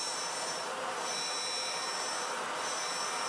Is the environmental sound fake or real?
fake